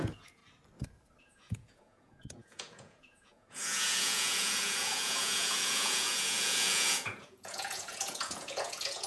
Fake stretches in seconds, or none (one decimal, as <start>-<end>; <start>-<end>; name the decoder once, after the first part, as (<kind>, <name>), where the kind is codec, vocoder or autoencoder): 0.0-0.4 (vocoder, Vocos); 1.2-9.1